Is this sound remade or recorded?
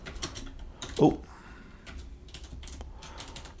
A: remade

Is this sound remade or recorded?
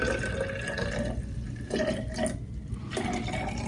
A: recorded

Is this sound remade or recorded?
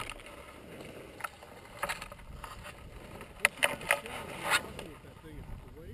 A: recorded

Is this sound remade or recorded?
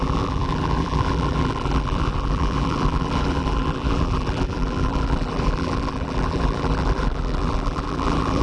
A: remade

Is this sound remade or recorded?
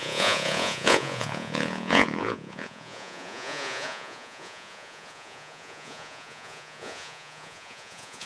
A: remade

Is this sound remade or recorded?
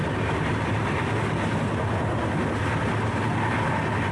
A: recorded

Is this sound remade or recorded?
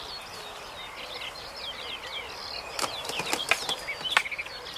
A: recorded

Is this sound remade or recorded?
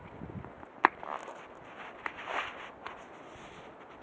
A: recorded